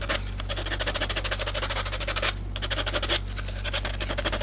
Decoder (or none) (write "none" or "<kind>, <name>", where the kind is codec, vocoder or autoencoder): none